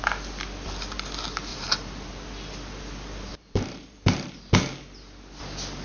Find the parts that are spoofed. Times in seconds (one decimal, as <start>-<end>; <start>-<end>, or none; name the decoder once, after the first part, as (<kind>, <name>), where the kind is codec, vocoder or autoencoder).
1.5-2.1 (vocoder, BigVGAN v2); 3.3-4.4